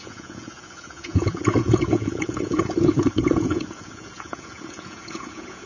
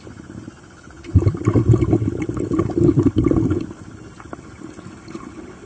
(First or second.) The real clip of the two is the second